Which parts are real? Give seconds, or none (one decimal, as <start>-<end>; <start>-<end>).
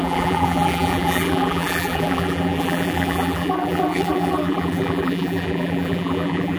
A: none